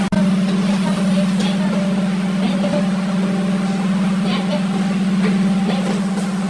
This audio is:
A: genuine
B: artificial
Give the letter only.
A